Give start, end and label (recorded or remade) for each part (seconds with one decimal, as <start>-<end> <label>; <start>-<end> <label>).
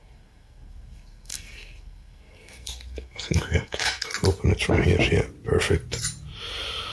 0.0-4.1 remade; 4.1-6.9 recorded